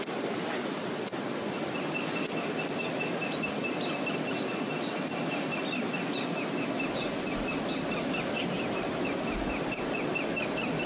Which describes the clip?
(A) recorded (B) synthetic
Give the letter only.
A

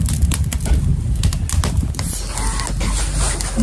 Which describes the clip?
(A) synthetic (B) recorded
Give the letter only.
B